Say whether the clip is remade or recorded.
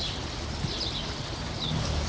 recorded